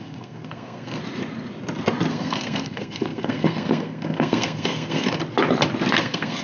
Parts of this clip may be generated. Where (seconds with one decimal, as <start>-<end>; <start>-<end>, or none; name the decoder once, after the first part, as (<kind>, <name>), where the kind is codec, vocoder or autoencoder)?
0.0-1.0 (codec, SNAC); 2.1-5.2; 6.0-6.4

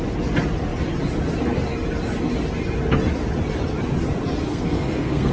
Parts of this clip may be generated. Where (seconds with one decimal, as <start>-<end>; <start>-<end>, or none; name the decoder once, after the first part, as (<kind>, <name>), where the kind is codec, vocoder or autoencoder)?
4.5-5.3 (codec, SNAC)

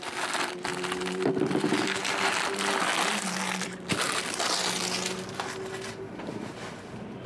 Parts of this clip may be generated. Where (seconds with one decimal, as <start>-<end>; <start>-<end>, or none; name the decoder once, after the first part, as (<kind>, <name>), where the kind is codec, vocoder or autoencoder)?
none

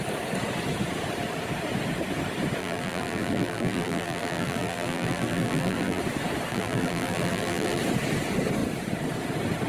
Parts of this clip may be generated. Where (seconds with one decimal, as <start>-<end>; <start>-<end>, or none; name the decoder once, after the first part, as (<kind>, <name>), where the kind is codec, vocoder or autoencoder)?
2.6-6.0 (vocoder, BigVGAN v2); 6.5-7.8

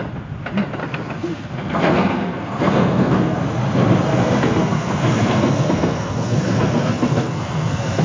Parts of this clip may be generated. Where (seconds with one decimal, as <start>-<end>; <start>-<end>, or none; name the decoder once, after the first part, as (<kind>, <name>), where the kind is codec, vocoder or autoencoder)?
0.8-3.4 (codec, SNAC); 4.1-8.0